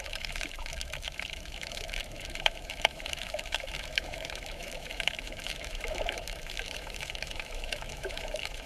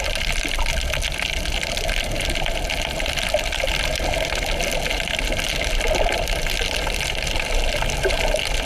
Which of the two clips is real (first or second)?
second